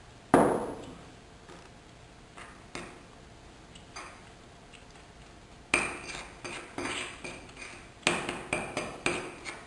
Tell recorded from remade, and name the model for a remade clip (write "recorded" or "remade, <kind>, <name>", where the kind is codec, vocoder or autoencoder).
recorded